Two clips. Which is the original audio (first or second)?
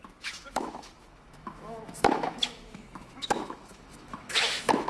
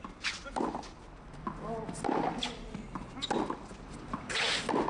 second